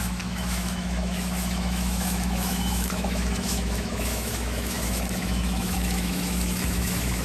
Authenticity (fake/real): fake